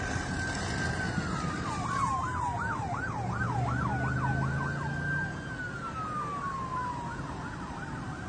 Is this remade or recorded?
recorded